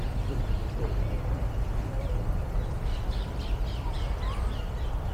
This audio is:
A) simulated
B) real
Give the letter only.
A